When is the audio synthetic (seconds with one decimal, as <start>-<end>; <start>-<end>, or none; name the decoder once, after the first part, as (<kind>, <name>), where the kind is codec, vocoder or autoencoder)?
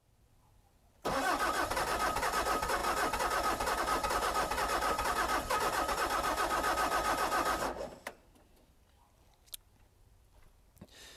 none